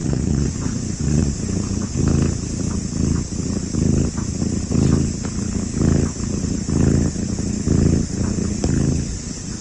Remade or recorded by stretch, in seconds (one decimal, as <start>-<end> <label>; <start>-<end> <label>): 0.0-2.0 remade; 2.0-9.6 recorded